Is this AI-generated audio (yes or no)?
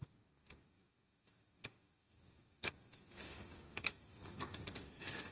yes